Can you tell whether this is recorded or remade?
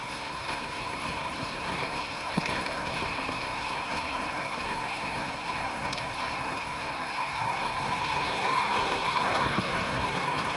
remade